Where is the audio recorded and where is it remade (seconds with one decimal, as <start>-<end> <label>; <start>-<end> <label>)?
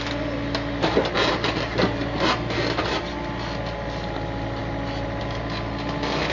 0.0-6.3 recorded